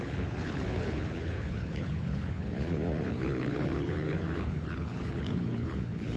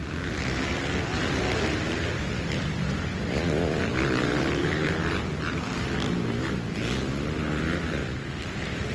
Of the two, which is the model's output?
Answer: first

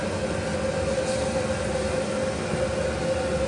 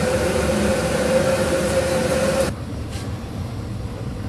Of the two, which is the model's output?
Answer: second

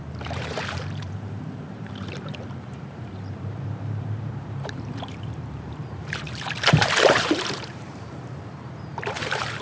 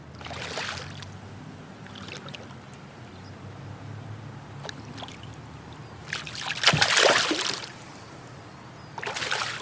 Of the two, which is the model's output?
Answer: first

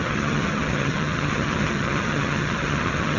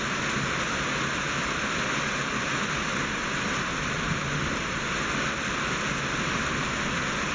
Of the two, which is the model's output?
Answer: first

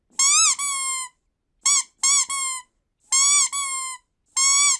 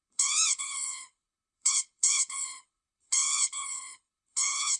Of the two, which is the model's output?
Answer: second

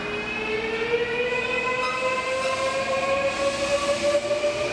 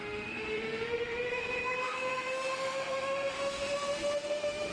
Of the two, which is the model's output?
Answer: second